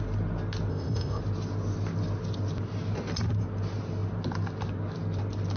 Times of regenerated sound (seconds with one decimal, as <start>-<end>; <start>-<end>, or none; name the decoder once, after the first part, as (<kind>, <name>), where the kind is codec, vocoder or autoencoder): 0.7-1.2 (codec, ZipCodec)